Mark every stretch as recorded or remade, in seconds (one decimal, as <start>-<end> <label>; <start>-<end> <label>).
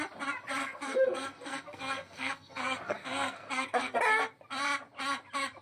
0.0-0.6 recorded; 0.6-4.0 remade; 4.0-5.6 recorded